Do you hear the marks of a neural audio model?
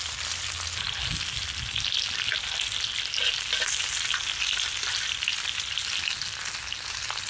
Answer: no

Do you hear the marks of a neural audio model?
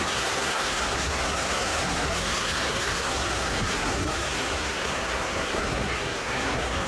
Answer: yes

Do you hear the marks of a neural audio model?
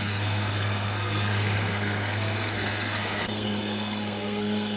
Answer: yes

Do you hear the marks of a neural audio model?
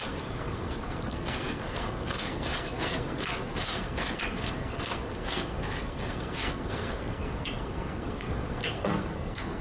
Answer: yes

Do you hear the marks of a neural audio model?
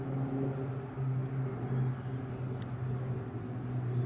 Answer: no